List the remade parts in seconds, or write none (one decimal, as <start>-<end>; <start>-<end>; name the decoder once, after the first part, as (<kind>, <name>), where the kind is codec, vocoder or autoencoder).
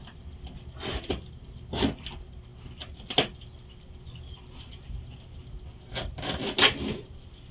none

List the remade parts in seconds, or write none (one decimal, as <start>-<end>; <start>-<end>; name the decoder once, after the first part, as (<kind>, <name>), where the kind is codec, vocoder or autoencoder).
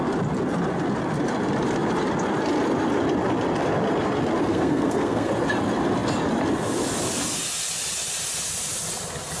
4.5-5.3 (codec, SNAC)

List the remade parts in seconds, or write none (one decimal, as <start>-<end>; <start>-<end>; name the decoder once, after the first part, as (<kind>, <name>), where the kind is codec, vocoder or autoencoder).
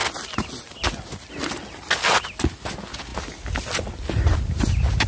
none